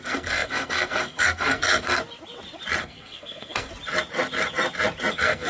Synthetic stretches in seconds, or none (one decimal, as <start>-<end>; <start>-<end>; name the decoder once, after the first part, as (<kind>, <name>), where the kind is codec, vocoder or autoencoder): 0.0-2.0 (codec, SNAC); 2.8-3.7; 5.1-5.5